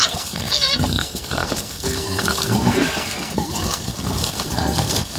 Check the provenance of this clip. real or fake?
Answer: fake